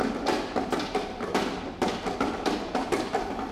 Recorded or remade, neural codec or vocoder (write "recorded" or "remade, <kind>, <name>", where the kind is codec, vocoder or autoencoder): recorded